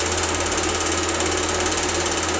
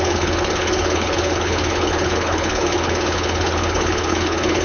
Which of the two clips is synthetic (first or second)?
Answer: second